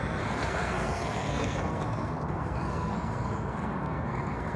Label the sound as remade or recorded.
remade